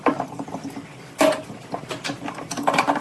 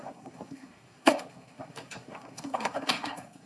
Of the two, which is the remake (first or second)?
second